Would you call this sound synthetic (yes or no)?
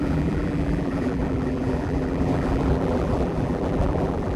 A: yes